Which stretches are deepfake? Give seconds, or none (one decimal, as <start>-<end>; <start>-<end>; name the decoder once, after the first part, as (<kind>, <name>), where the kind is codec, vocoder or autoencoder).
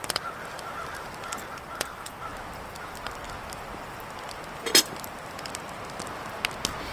0.4-1.4 (vocoder, BigVGAN v2)